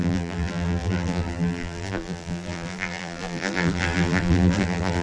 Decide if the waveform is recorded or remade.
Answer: remade